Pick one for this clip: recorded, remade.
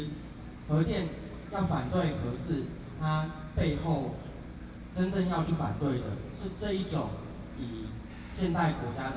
recorded